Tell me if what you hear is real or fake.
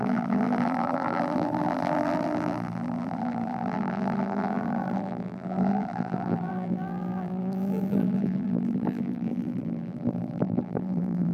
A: fake